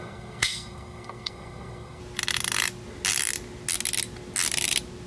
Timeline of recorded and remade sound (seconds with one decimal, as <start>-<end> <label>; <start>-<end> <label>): 0.0-2.0 remade; 2.0-5.1 recorded